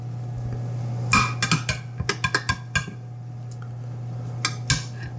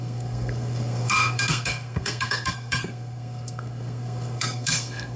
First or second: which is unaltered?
first